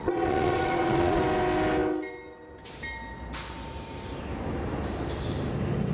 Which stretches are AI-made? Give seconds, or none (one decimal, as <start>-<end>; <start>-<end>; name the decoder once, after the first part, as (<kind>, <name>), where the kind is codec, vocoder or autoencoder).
0.0-1.2 (vocoder, Vocos)